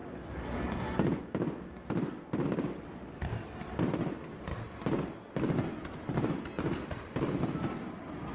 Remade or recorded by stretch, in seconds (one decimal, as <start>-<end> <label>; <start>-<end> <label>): 0.0-8.3 recorded